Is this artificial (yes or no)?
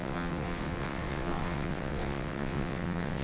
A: yes